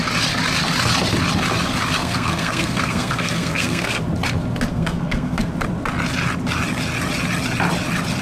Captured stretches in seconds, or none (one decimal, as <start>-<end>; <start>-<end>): 0.0-2.0; 4.0-4.7; 5.5-8.2